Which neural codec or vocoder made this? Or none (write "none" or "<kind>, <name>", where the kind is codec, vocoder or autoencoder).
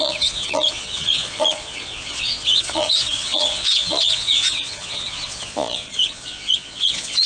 vocoder, Vocos